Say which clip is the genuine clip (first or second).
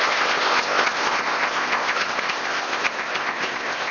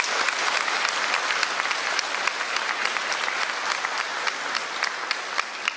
second